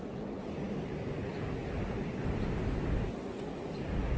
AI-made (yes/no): no